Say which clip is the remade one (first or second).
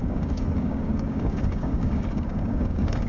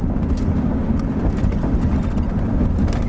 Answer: first